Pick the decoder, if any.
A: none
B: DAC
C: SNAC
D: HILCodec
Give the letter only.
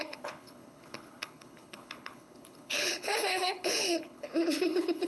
D